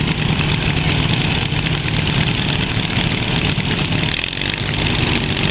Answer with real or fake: real